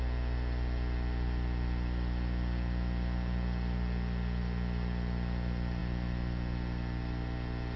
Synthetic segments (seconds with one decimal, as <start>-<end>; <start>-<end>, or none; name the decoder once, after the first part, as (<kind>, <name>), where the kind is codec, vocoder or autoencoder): none